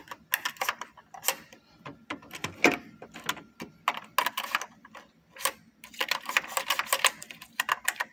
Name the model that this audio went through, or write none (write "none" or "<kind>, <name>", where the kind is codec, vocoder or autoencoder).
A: none